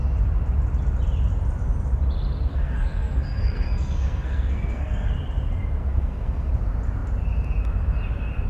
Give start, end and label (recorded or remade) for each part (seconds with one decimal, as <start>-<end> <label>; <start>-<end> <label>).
0.0-2.5 recorded; 2.5-5.1 remade; 5.1-5.8 recorded; 5.8-6.5 remade; 6.5-8.5 recorded